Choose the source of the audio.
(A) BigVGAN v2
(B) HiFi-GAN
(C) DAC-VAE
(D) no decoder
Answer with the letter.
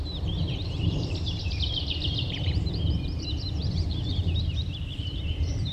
A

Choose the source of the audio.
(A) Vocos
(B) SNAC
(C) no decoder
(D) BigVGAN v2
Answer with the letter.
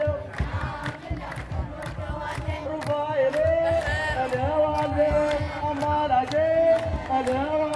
C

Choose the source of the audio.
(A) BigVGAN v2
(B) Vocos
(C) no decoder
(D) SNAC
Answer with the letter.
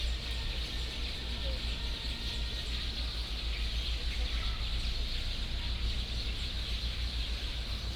C